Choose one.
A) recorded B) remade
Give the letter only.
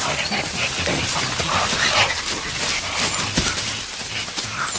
A